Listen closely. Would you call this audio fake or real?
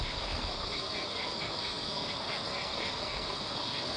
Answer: fake